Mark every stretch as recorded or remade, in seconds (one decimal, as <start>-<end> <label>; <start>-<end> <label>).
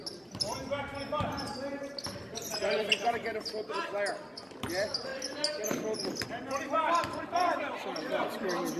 0.0-2.4 recorded; 2.4-3.4 remade; 3.4-8.8 recorded